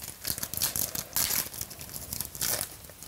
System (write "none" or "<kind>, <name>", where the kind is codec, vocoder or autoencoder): none